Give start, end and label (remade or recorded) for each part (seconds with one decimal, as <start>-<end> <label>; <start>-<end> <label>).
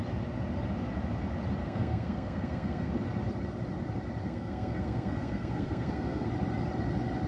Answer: 0.0-1.6 recorded; 1.6-2.9 remade; 2.9-4.2 recorded; 4.2-6.3 remade; 6.3-7.3 recorded